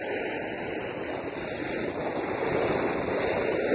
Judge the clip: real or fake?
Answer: real